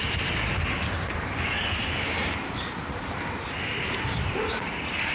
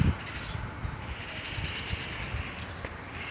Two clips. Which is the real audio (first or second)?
second